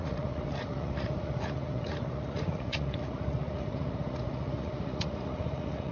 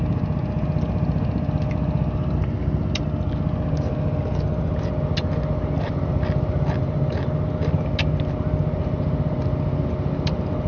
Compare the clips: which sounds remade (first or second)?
first